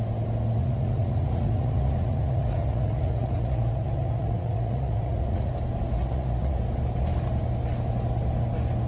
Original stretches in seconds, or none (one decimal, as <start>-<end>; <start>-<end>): 0.0-0.6; 5.5-6.0; 6.6-8.9